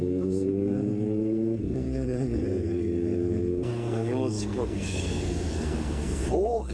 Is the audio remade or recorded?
remade